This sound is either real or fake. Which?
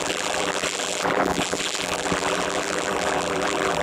fake